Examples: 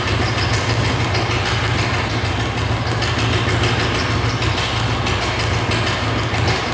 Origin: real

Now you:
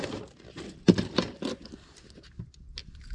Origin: real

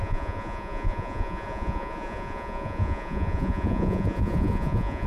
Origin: fake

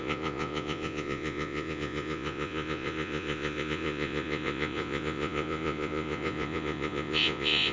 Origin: fake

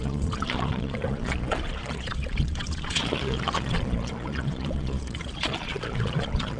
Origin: fake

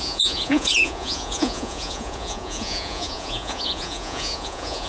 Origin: fake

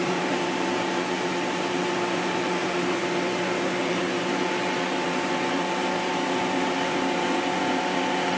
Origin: fake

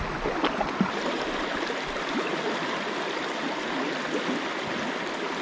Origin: real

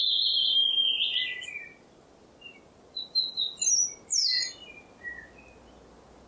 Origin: real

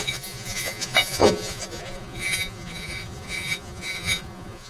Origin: fake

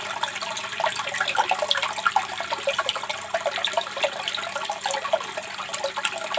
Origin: real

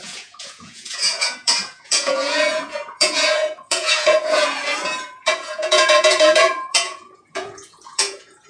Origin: fake